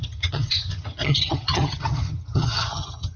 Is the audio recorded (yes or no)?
no